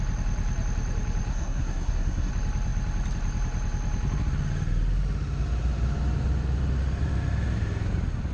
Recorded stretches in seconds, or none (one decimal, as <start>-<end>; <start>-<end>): 0.0-1.3; 2.3-8.3